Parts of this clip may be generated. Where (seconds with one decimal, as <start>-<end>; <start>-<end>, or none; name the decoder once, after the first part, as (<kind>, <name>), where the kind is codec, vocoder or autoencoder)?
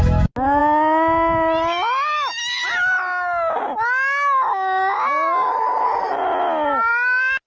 none